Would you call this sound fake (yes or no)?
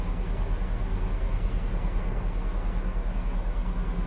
yes